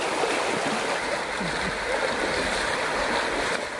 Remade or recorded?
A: recorded